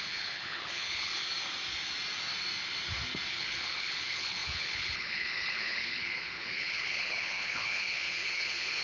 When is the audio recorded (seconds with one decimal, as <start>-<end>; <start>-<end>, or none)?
1.2-3.3